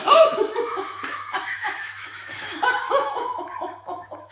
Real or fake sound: fake